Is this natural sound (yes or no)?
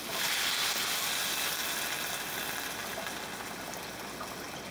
yes